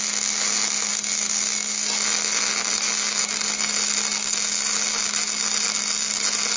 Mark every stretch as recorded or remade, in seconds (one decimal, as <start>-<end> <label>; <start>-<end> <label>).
0.0-6.6 recorded